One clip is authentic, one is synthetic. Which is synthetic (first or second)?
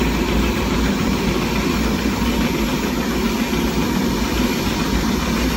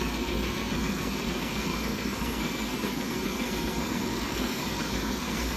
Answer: second